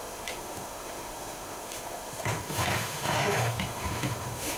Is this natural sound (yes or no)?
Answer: no